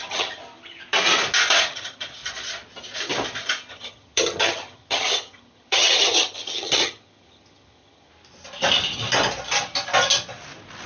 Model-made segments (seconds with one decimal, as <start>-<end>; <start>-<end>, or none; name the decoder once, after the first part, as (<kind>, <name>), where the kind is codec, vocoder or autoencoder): 0.0-0.4 (vocoder, HiFi-GAN); 1.6-2.2; 3.7-8.1